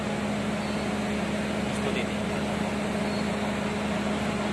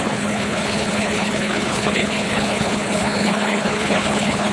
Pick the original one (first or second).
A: first